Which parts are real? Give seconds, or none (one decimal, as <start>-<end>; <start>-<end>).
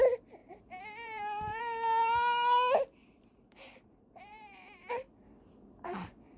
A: 0.0-0.4; 1.6-3.0; 5.0-6.4